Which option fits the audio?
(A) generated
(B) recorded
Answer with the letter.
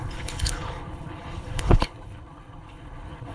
A